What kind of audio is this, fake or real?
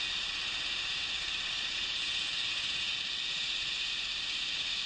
real